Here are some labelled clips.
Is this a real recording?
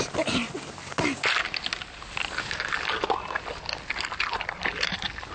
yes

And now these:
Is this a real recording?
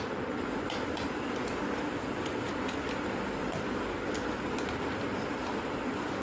yes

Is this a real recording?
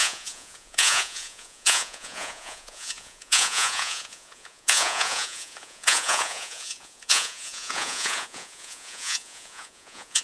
no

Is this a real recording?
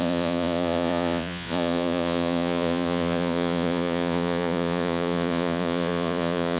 no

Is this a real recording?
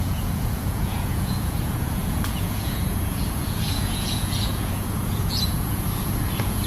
no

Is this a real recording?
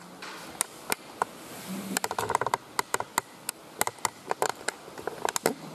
yes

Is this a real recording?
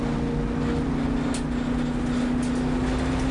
yes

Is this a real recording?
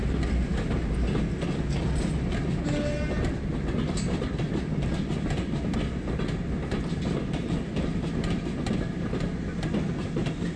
yes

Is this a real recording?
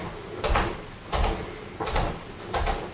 yes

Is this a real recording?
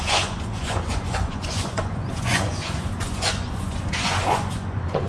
no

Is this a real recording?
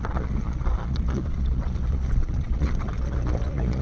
no